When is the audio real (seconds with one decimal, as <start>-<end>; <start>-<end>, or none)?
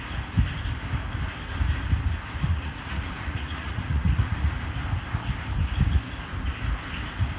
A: 0.0-2.5; 4.7-7.4